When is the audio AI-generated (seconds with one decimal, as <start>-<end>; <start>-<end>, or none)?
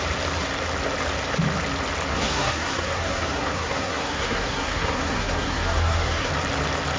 2.1-6.3